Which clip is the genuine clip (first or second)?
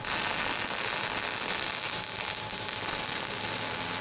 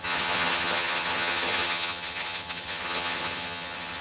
first